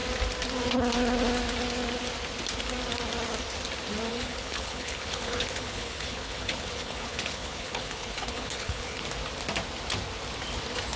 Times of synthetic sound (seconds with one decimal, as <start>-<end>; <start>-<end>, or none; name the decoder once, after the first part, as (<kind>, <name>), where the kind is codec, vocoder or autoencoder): 4.1-9.0 (codec, HILCodec)